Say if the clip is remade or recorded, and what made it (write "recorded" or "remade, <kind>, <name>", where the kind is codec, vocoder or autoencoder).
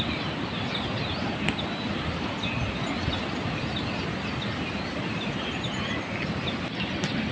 recorded